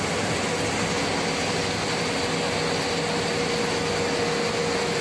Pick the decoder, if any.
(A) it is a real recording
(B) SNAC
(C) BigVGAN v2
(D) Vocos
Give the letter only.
A